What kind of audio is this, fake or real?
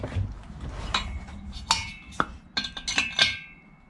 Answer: real